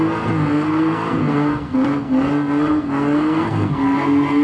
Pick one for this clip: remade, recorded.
remade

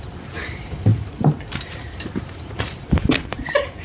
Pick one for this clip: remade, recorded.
remade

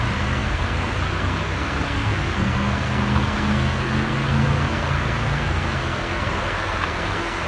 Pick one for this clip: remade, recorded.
remade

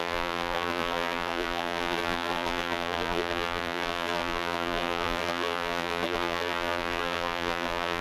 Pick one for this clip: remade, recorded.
remade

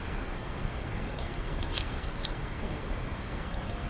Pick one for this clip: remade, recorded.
remade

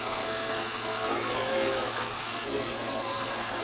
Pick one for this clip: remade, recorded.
remade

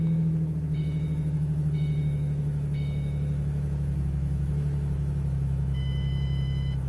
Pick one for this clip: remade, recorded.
remade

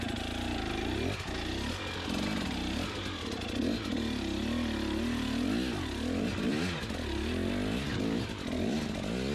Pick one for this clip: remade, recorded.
recorded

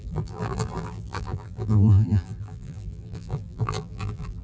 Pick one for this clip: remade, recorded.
remade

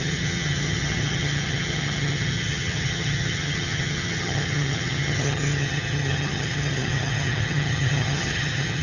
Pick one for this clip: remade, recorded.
remade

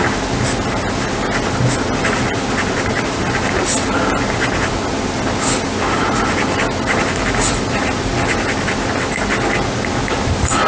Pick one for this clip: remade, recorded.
recorded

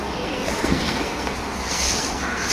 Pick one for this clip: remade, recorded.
remade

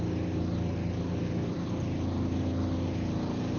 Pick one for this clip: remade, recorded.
recorded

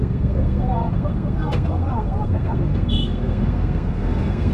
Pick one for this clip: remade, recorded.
remade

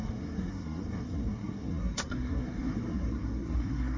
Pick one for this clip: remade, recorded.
remade